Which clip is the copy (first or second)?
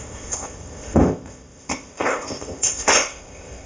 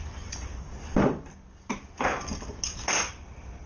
first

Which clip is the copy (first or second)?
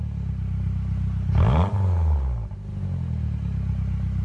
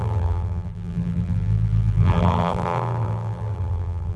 second